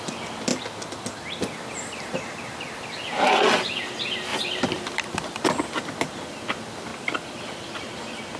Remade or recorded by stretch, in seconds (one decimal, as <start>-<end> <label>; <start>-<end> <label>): 0.0-4.3 recorded; 4.3-5.0 remade; 5.0-6.9 recorded; 6.9-7.8 remade; 7.8-8.4 recorded

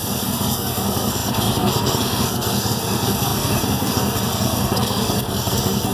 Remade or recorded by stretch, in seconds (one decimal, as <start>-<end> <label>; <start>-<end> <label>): 0.0-5.9 remade

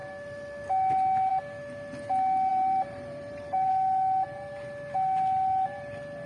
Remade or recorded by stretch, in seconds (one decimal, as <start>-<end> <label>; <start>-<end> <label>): 0.0-2.5 recorded; 2.5-3.7 remade; 3.7-6.3 recorded

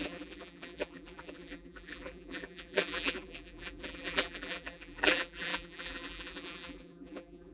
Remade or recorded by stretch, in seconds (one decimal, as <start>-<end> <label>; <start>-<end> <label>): 0.0-7.5 remade